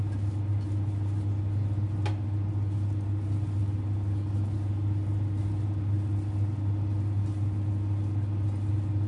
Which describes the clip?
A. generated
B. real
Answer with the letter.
B